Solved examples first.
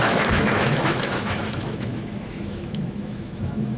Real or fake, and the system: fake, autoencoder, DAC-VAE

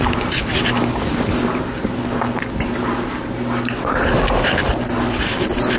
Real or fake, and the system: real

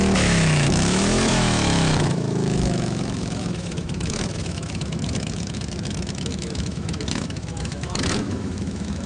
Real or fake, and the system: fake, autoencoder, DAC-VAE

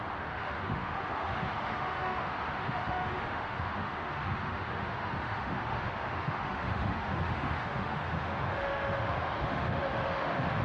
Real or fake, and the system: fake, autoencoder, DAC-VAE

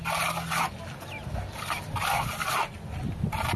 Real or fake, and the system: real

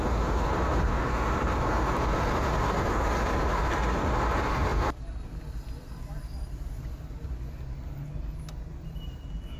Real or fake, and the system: real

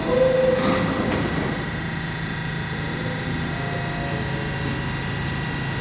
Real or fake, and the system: real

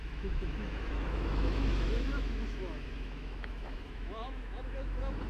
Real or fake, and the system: fake, autoencoder, DAC-VAE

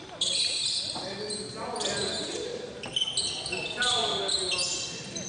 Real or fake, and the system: real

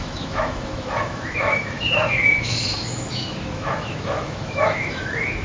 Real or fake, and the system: fake, autoencoder, DAC-VAE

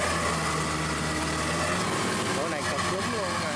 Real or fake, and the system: real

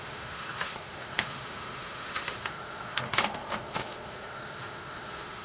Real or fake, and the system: fake, autoencoder, DAC-VAE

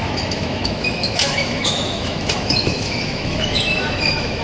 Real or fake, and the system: fake, autoencoder, DAC-VAE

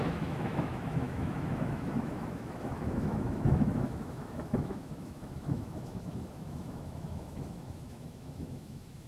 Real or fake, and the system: fake, autoencoder, DAC-VAE